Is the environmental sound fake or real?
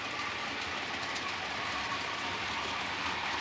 real